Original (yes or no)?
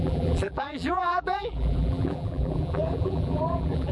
no